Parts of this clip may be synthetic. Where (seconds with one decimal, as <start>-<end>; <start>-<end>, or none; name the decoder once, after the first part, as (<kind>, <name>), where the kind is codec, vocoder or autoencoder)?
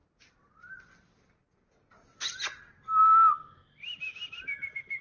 3.0-3.6 (codec, DAC)